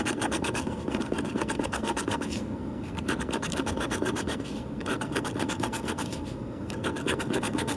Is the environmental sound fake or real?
fake